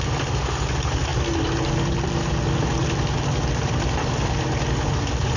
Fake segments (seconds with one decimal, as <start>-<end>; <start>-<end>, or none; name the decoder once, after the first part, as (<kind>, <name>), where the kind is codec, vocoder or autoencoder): none